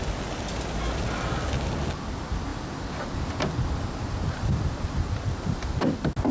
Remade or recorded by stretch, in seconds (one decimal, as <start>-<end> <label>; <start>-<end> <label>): 0.0-6.3 recorded

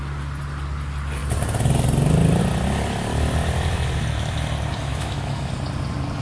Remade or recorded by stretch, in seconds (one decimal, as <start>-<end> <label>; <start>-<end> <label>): 0.0-4.9 recorded; 4.9-5.5 remade; 5.5-6.2 recorded

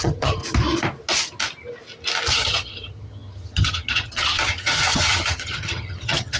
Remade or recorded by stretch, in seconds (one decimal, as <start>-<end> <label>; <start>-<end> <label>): 0.0-0.4 remade; 0.4-2.3 recorded; 2.3-6.4 remade

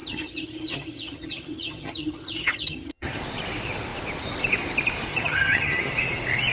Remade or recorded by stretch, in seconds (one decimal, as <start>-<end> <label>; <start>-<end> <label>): 0.0-3.2 remade; 3.2-5.1 recorded; 5.1-6.0 remade; 6.0-6.5 recorded

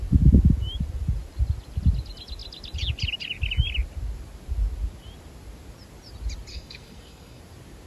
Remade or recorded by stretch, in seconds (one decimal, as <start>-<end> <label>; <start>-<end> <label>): 0.0-6.5 recorded; 6.5-7.4 remade; 7.4-7.9 recorded